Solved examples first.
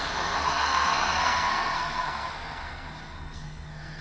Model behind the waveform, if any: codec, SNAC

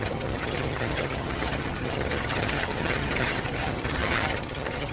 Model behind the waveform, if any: vocoder, HiFi-GAN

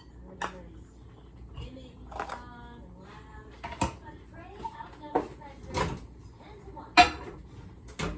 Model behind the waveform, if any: none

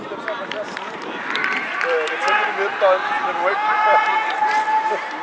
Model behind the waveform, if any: none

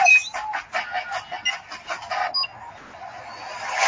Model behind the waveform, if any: none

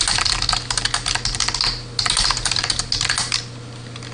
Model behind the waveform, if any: none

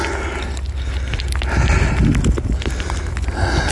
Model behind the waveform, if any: none